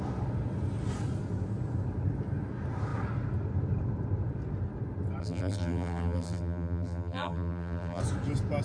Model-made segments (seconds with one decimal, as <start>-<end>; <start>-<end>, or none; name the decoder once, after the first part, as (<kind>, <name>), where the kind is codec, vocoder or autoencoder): 5.2-8.0 (vocoder, BigVGAN v2)